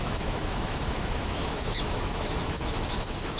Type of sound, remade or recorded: remade